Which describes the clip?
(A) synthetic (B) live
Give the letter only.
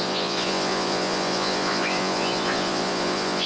A